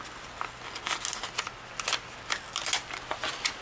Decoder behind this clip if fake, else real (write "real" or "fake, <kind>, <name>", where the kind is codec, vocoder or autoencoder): real